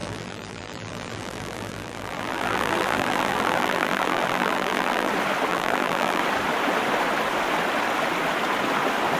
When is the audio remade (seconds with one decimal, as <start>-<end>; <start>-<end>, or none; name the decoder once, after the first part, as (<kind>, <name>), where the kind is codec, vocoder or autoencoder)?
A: 0.0-5.1 (vocoder, BigVGAN v2); 5.5-6.2